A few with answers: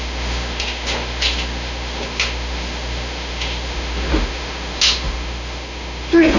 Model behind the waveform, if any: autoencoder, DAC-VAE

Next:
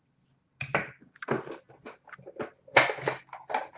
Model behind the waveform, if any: none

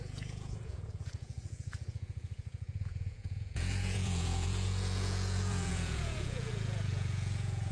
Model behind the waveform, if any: vocoder, Vocos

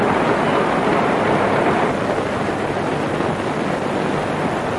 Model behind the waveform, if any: none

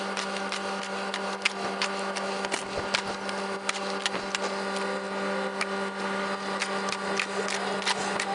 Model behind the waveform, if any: none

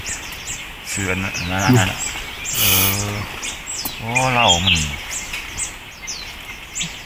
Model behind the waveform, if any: none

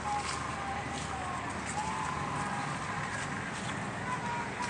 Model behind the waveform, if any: none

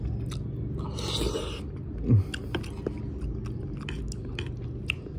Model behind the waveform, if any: none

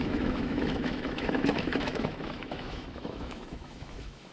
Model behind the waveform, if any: autoencoder, DAC-VAE